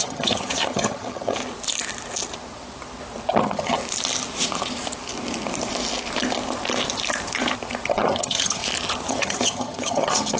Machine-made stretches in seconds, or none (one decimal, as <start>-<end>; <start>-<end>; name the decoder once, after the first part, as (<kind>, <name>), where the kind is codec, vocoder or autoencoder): 0.0-1.4 (vocoder, HiFi-GAN); 3.4-3.8; 7.9-8.6; 9.1-10.4